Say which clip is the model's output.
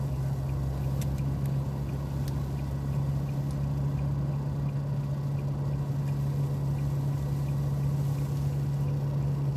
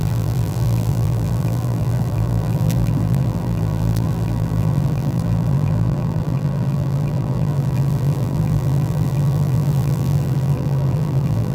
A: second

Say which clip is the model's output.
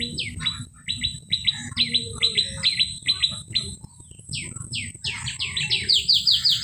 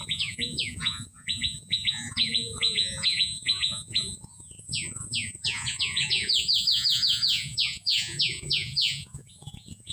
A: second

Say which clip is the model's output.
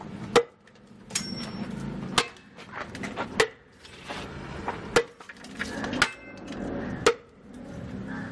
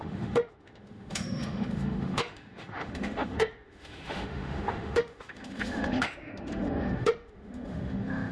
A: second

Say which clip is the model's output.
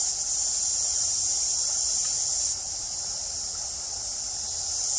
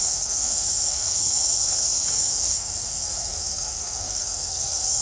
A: second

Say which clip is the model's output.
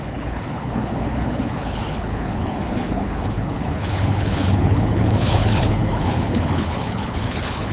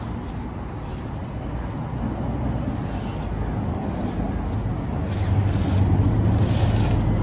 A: first